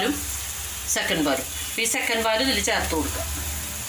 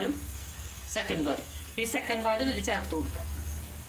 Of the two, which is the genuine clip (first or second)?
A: first